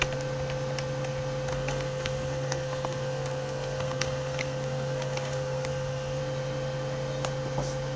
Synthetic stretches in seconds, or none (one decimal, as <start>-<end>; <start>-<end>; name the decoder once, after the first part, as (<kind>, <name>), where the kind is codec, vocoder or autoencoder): 1.5-6.2 (codec, SNAC)